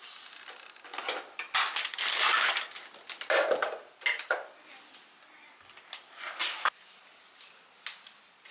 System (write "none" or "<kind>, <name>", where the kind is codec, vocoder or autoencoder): none